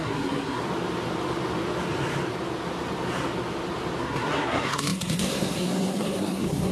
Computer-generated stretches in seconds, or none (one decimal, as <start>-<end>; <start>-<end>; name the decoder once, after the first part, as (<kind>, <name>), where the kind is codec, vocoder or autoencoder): 0.0-0.6 (codec, SNAC); 4.0-6.7